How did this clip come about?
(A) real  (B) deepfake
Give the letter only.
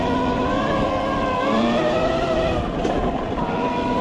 A